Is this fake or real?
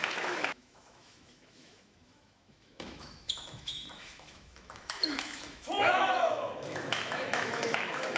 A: fake